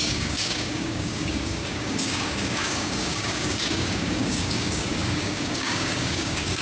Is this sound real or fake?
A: fake